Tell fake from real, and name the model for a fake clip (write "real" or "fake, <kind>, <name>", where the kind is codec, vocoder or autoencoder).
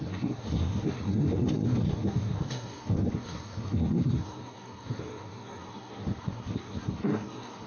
fake, codec, SNAC